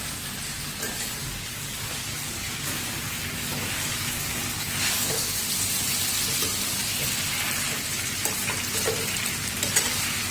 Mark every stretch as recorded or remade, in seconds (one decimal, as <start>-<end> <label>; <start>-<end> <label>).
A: 0.0-1.2 recorded; 1.2-5.4 remade; 5.4-10.3 recorded